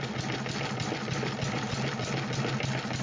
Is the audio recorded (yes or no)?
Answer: yes